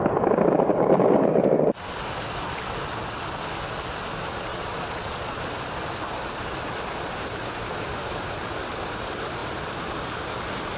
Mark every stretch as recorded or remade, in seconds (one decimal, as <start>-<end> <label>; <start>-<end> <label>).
0.0-4.5 recorded; 4.5-5.4 remade; 5.4-10.8 recorded

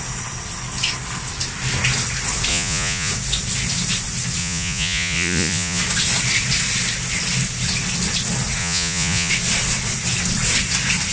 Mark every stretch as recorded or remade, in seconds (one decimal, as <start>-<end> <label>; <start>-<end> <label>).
0.0-2.5 recorded; 2.5-3.1 remade; 3.1-4.4 recorded; 4.4-5.8 remade; 5.8-8.6 recorded; 8.6-9.3 remade; 9.3-11.1 recorded

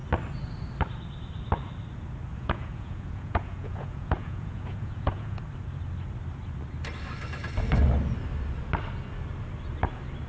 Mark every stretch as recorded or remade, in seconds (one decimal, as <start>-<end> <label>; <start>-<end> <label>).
0.0-2.3 recorded; 2.3-5.4 remade; 5.4-10.3 recorded

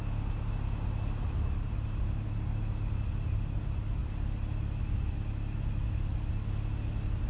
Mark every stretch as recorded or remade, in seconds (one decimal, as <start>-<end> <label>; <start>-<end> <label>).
0.0-7.3 recorded